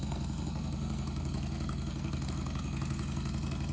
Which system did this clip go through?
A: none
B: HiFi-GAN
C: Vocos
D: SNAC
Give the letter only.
D